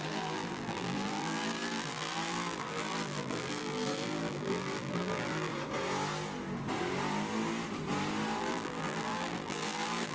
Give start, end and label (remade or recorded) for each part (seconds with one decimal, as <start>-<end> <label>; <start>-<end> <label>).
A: 0.0-5.5 remade; 5.5-8.4 recorded; 8.4-10.1 remade